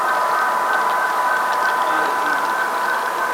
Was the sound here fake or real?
fake